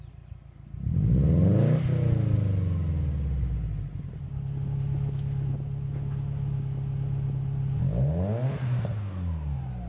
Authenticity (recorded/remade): recorded